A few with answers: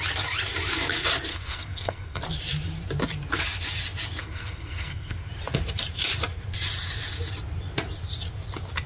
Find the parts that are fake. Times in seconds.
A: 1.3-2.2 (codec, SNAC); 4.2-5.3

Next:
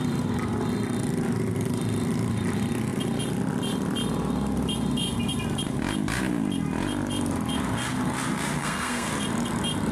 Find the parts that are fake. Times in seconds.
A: 8.6-9.1 (codec, SNAC)